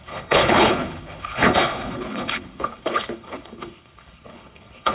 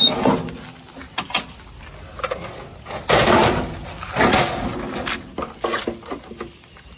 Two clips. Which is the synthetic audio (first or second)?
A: first